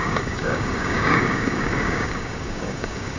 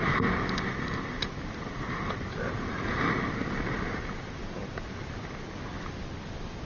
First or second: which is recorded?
second